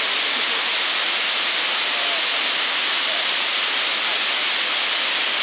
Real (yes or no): yes